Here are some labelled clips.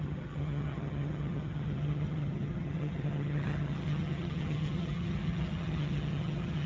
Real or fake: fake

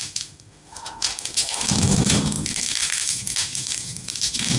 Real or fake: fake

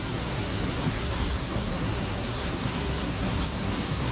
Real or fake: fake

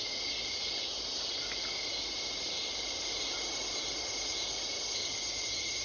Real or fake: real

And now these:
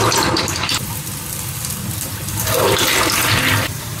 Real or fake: fake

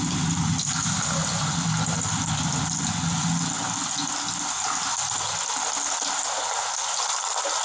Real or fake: real